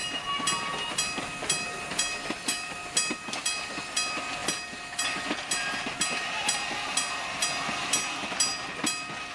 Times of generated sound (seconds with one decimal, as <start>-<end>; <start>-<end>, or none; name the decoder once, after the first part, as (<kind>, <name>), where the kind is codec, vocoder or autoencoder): none